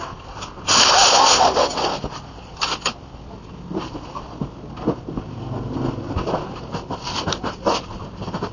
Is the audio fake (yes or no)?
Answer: no